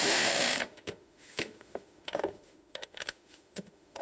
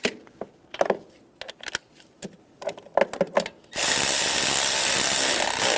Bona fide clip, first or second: second